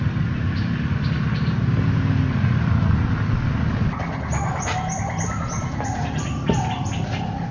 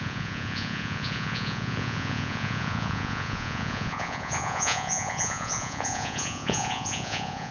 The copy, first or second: second